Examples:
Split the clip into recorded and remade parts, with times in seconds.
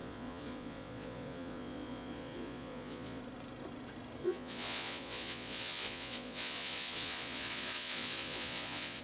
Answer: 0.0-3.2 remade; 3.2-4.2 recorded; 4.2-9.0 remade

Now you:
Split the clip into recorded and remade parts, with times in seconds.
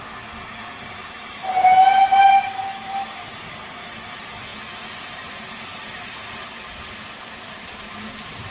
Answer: 0.0-8.5 recorded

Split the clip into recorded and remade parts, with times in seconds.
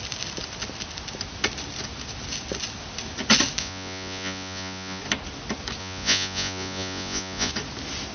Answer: 0.0-3.6 recorded; 3.6-5.0 remade; 5.0-5.8 recorded; 5.8-7.5 remade; 7.5-8.1 recorded